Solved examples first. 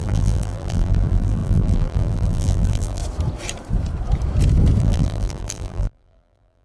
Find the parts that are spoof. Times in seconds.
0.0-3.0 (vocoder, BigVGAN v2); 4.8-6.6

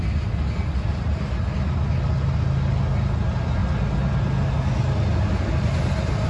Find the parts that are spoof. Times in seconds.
none

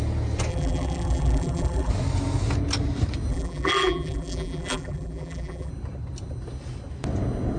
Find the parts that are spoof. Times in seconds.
0.5-1.9 (vocoder, BigVGAN v2); 3.3-5.7

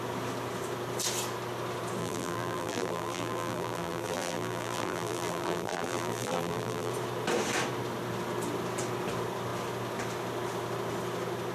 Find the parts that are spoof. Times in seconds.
2.0-6.9 (vocoder, BigVGAN v2)

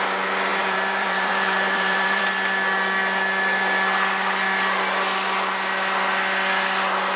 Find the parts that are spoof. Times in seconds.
0.5-2.2 (vocoder, BigVGAN v2)